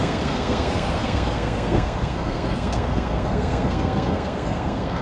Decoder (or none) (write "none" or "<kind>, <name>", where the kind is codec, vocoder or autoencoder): codec, SNAC